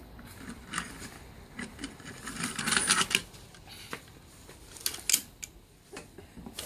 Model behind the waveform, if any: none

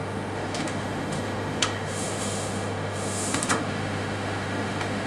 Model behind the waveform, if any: autoencoder, DAC-VAE